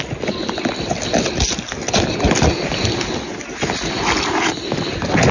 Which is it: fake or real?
real